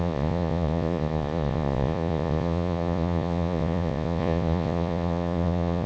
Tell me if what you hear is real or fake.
fake